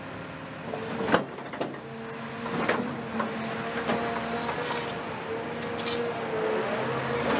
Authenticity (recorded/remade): recorded